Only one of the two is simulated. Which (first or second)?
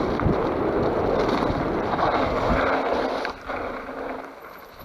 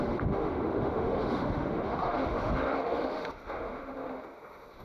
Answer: second